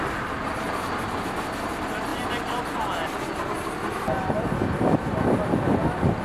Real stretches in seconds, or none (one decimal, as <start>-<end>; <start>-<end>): 0.0-6.2